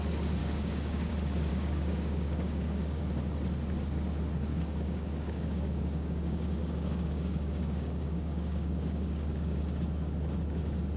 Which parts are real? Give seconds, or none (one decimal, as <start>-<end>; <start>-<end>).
0.0-0.4; 1.1-1.5; 3.0-4.5; 9.6-11.0